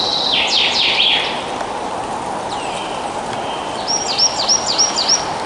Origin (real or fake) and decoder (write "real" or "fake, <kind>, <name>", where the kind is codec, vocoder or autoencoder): real